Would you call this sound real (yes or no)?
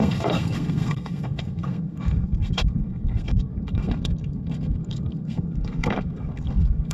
no